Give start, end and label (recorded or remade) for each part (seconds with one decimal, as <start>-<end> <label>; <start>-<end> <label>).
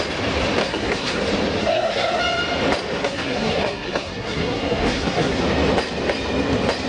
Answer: 0.0-0.6 recorded; 0.6-1.2 remade; 1.2-1.6 recorded; 1.6-2.2 remade; 2.2-3.0 recorded; 3.0-5.4 remade; 5.4-6.9 recorded